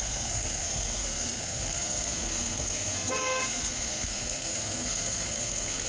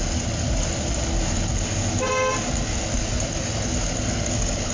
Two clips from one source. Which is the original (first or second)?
second